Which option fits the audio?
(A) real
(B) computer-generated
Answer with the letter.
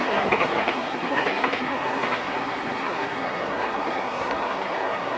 B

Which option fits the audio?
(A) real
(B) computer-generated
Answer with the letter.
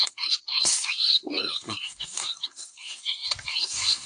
B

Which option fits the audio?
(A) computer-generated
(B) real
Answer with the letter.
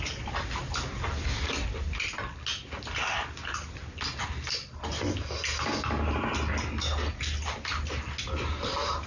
B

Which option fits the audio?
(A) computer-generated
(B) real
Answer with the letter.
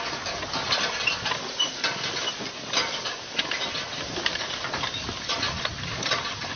B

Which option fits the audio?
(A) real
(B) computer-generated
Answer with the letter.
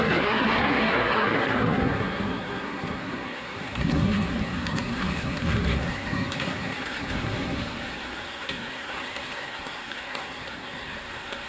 B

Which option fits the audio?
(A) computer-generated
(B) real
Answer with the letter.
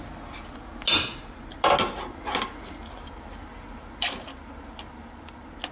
B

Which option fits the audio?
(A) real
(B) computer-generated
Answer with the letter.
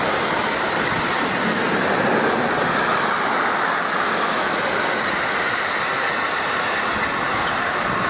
A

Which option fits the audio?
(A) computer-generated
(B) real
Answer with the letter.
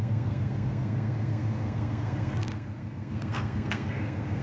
A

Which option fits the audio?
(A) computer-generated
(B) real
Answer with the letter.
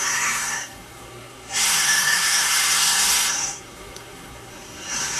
A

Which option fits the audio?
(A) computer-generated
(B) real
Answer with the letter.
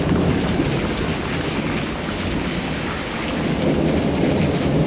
B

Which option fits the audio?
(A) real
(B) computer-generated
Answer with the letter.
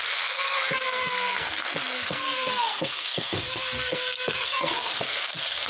B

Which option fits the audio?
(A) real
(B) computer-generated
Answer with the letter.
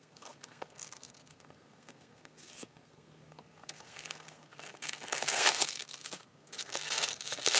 B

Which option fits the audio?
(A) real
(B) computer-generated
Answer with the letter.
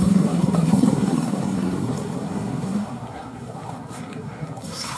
B